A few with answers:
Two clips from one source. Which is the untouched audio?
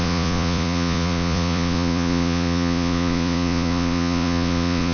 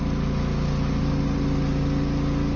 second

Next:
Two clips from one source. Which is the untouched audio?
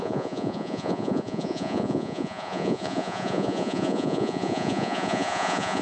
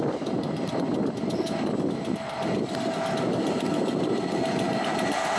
second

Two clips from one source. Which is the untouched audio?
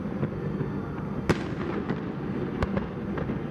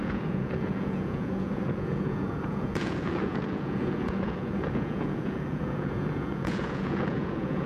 first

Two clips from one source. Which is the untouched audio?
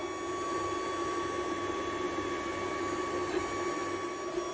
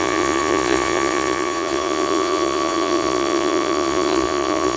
first